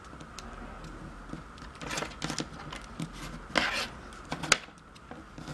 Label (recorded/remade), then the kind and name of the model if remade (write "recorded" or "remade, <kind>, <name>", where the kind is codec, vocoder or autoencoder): recorded